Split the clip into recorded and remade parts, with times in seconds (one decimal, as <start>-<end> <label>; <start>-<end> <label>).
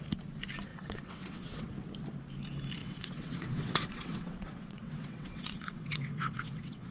0.0-0.7 recorded; 0.7-1.7 remade; 1.7-2.8 recorded; 2.8-6.9 remade